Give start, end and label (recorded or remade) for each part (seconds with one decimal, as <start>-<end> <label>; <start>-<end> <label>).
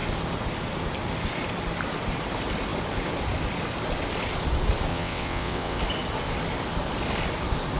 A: 0.0-4.9 recorded; 4.9-5.8 remade; 5.8-7.8 recorded